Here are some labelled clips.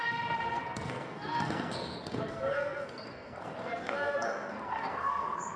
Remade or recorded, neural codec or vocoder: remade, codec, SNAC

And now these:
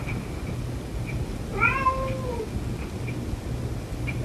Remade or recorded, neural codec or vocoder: recorded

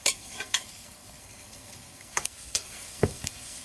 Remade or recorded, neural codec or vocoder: remade, codec, SNAC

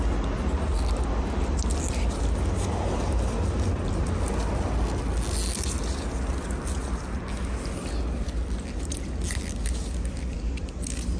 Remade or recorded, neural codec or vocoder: recorded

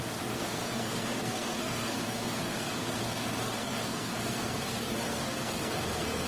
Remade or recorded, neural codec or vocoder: remade, codec, SNAC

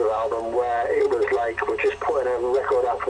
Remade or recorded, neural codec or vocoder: recorded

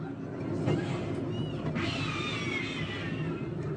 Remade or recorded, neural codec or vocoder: recorded